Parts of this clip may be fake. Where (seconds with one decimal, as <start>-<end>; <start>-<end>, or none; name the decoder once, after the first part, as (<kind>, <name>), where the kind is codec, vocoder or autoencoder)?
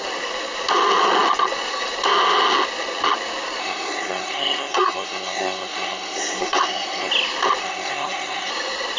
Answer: 3.6-7.1 (codec, SNAC); 7.6-8.5